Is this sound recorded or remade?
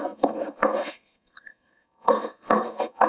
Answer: remade